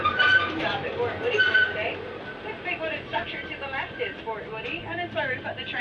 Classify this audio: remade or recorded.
recorded